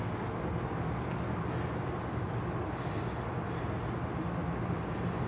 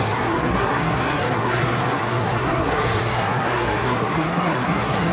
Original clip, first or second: first